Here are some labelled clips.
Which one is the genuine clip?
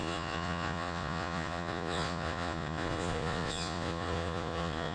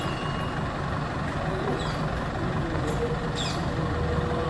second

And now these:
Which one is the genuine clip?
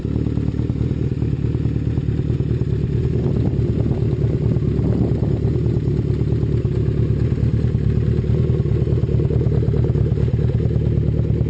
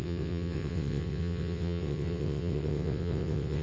first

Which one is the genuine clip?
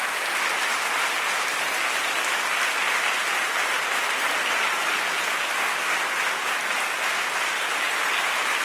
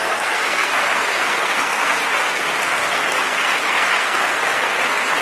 first